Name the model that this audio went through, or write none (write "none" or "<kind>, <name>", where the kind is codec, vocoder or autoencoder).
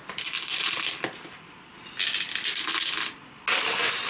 none